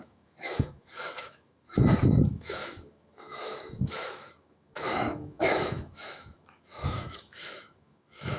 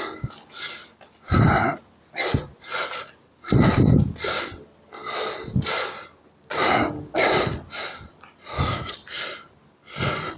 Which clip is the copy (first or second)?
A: first